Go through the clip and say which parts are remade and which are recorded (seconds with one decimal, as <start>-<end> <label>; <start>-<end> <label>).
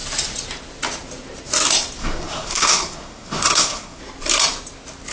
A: 0.0-2.0 recorded; 2.0-4.0 remade; 4.0-5.1 recorded